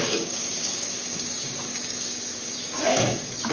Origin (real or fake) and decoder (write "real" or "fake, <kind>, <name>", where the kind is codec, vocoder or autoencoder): fake, codec, DAC